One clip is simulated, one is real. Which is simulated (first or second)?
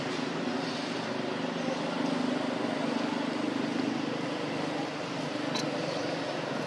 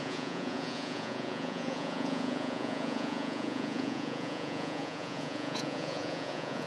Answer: second